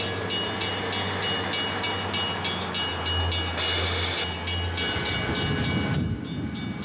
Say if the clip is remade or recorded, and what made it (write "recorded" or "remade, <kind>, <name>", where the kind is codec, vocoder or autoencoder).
recorded